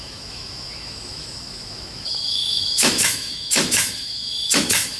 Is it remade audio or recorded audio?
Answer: remade